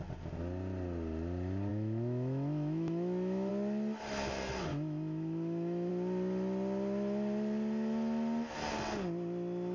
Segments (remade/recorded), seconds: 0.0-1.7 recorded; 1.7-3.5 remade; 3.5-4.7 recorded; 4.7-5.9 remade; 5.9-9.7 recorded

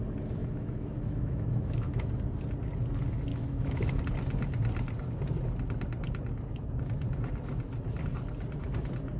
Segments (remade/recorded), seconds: 0.0-0.4 recorded; 0.4-2.1 remade; 2.1-3.3 recorded; 3.3-4.0 remade; 4.0-9.2 recorded

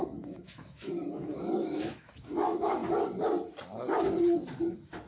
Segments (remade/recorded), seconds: 0.0-2.8 remade; 2.8-4.6 recorded; 4.6-5.1 remade